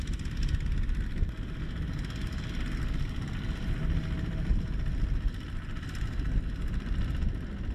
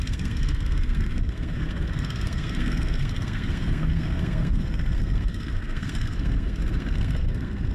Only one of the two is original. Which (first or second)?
first